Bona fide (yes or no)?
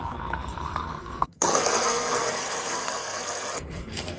no